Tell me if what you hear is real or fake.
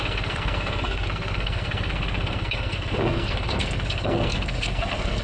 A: fake